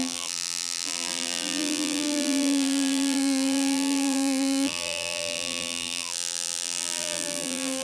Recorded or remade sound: remade